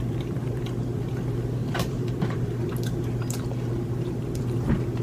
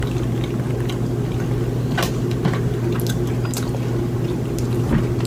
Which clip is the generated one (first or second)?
first